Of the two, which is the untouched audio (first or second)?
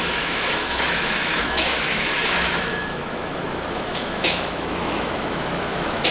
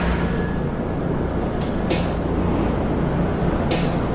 second